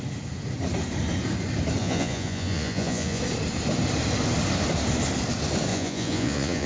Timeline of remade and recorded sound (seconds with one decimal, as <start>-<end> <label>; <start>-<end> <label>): 0.0-1.8 recorded; 1.8-3.2 remade; 3.2-5.7 recorded; 5.7-6.7 remade